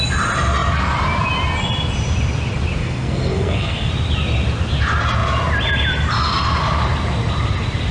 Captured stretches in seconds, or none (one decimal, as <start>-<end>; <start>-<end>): 0.0-2.8; 3.9-7.9